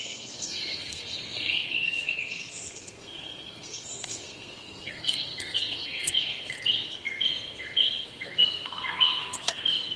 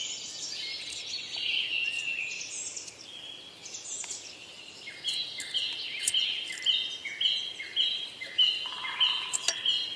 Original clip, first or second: second